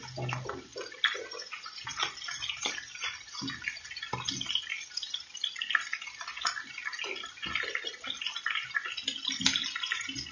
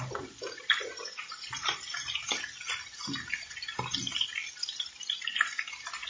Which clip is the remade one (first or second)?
second